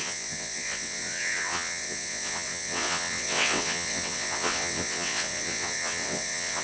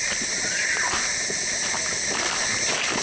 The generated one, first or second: first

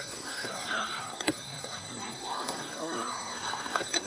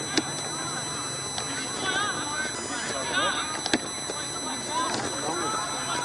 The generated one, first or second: first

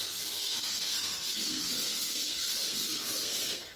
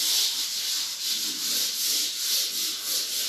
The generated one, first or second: first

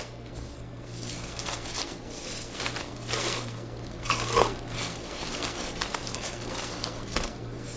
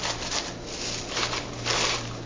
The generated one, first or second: first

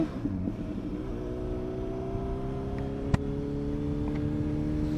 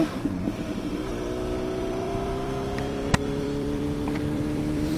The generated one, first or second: second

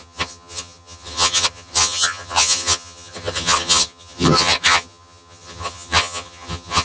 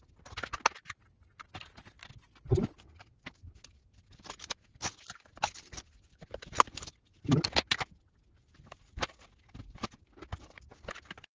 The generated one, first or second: first